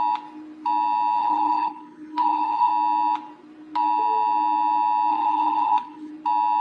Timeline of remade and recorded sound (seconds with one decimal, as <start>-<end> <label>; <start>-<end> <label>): 0.0-1.2 recorded; 1.2-2.7 remade; 2.7-5.1 recorded; 5.1-6.1 remade; 6.1-6.6 recorded